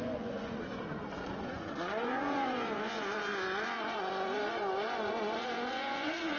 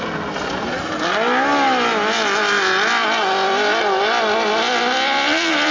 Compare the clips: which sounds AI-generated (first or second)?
first